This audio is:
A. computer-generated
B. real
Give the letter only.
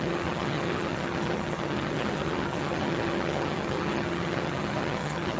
A